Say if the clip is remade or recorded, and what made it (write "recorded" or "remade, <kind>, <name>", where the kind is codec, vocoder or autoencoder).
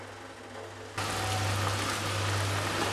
recorded